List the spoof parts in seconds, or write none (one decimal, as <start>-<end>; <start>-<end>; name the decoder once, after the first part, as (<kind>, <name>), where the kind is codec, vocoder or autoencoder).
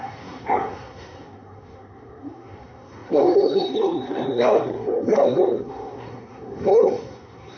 0.0-7.6 (codec, SNAC)